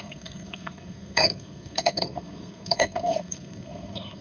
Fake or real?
fake